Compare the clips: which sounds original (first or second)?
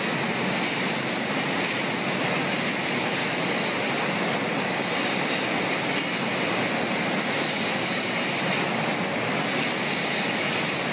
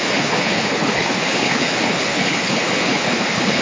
first